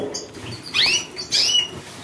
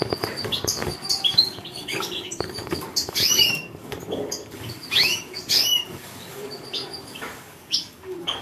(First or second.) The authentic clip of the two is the first